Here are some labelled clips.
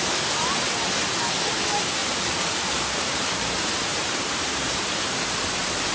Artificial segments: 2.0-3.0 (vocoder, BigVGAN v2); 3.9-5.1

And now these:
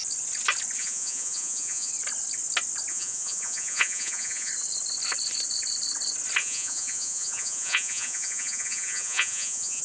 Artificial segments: 0.8-1.9 (vocoder, Vocos); 2.9-4.5; 6.4-9.8

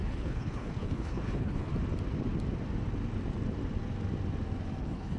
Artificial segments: 0.0-1.7 (codec, HILCodec); 4.8-5.2

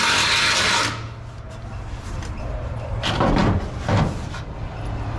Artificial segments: none

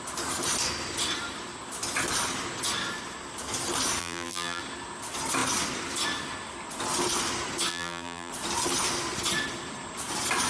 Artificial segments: 4.0-4.6 (vocoder, BigVGAN v2); 7.7-8.3

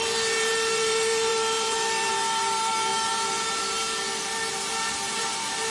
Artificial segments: 0.0-5.7 (vocoder, BigVGAN v2)

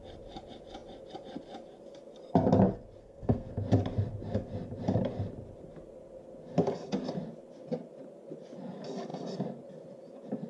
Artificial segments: 3.0-3.5 (codec, SNAC)

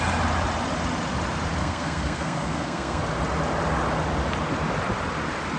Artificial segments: 1.6-3.0 (codec, SNAC)